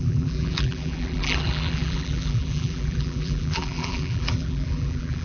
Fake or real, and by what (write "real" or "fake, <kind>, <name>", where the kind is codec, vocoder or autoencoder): fake, vocoder, BigVGAN v2